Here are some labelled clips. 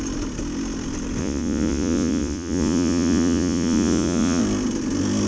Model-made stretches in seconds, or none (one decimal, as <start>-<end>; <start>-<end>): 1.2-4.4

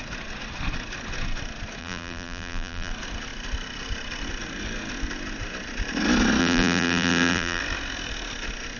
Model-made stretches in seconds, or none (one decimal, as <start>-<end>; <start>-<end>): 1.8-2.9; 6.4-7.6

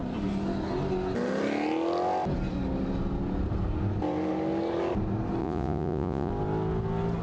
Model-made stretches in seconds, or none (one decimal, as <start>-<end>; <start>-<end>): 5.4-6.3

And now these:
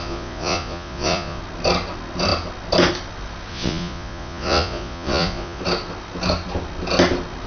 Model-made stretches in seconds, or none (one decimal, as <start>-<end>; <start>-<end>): 0.0-1.4; 3.5-5.6

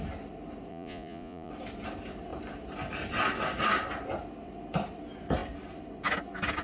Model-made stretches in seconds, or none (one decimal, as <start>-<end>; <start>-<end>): 0.7-1.5

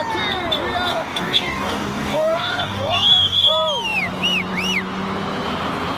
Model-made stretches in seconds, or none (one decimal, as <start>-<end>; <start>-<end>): 0.9-3.5

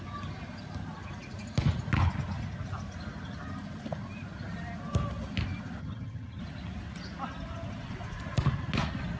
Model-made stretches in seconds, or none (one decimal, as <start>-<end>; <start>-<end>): 5.8-6.4

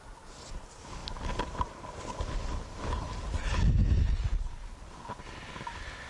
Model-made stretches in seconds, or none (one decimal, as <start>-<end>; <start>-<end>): none